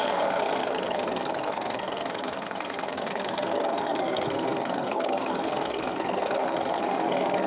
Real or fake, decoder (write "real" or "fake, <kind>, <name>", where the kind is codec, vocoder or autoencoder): fake, codec, SNAC